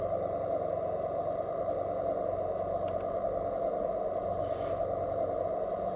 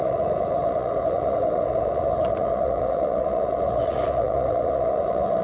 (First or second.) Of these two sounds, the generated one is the second